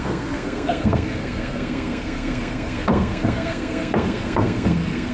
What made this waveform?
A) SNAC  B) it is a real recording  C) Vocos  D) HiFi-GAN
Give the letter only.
A